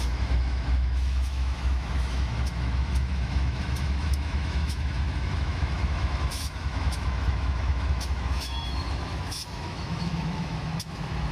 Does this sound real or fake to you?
fake